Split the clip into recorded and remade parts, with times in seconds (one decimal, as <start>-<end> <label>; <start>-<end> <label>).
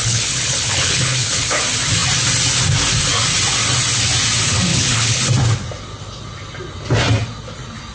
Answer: 0.0-1.6 remade; 1.6-4.7 recorded; 4.7-5.2 remade; 5.2-7.9 recorded